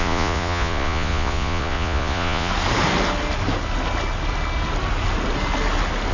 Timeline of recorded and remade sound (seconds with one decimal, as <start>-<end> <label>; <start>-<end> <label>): 0.0-2.5 remade; 2.5-6.1 recorded